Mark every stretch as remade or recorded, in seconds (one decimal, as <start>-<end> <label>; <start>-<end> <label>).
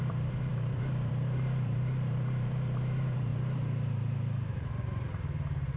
0.0-5.8 remade